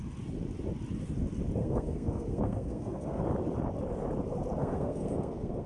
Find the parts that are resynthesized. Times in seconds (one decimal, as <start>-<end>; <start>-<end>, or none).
1.6-3.2; 4.6-5.7